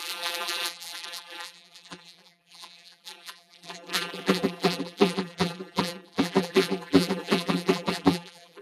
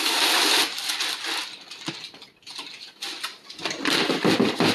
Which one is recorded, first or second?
second